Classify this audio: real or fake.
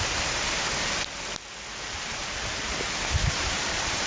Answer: real